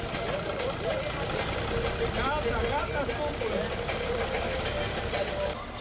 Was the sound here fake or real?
real